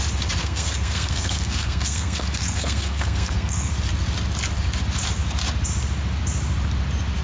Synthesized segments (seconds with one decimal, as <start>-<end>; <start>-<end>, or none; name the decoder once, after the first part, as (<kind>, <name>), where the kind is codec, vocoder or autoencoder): 0.4-3.7 (codec, SNAC)

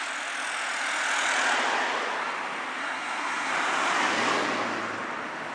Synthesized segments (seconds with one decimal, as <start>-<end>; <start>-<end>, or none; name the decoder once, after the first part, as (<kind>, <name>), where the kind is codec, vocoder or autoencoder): 2.8-3.5 (codec, SNAC)

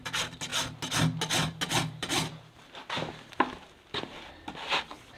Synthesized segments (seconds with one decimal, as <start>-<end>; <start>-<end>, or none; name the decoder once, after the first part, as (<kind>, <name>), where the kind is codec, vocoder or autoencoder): none